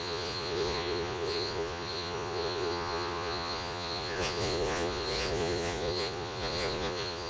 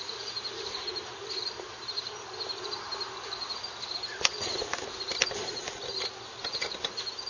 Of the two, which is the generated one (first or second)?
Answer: first